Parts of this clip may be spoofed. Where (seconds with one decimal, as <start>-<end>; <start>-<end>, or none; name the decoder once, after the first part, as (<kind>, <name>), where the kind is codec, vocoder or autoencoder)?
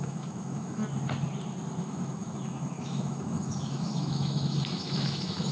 0.0-0.8 (autoencoder, DAC-VAE); 1.8-5.5